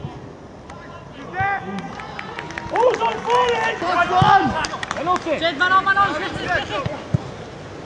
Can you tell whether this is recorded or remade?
recorded